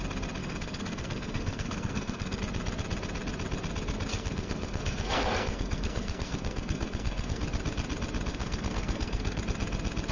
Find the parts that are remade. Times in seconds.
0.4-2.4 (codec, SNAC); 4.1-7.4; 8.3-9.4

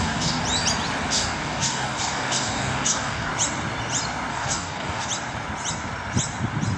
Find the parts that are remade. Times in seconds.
0.0-0.4 (codec, DAC); 1.1-3.3; 4.3-5.1